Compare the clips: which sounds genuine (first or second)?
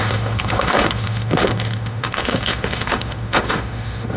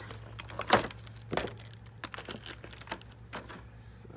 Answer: second